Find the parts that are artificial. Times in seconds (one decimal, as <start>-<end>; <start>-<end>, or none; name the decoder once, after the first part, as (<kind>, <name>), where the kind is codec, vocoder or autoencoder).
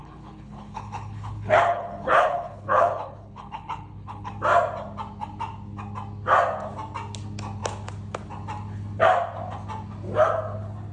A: 0.0-4.3 (codec, HILCodec)